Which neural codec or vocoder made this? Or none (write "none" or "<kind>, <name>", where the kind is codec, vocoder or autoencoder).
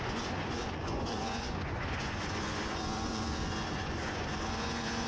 vocoder, Vocos